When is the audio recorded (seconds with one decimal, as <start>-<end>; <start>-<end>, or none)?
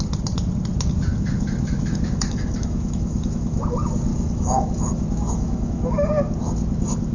0.0-1.1; 3.6-4.1; 6.1-7.1